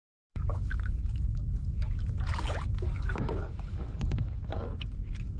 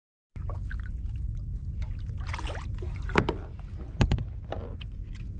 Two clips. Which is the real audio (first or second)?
second